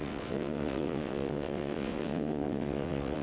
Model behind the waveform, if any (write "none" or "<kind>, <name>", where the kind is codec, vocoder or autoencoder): vocoder, WaveNeXt